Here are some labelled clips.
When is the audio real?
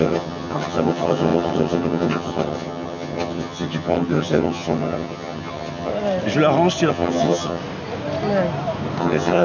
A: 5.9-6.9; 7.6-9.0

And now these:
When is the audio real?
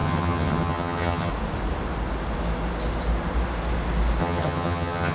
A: 1.3-4.2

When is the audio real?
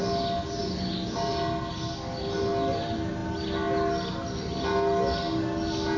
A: 0.0-6.0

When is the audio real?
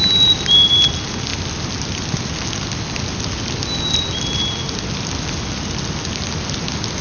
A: 0.0-7.0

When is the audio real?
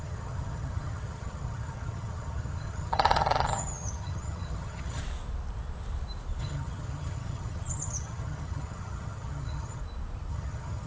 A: 5.0-6.4; 9.8-10.3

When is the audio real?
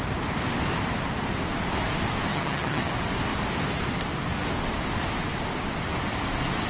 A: 0.0-2.3; 2.9-6.7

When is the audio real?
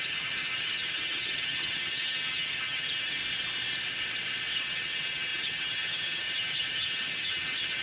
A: 3.2-4.6